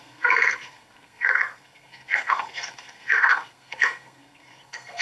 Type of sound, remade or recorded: remade